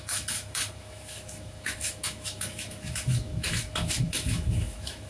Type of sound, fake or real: fake